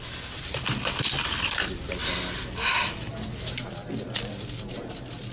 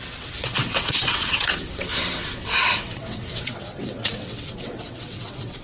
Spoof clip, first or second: second